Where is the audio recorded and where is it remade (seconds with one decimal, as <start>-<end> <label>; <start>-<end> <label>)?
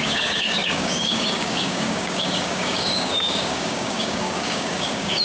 0.0-5.2 remade